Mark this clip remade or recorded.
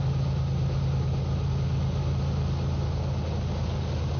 recorded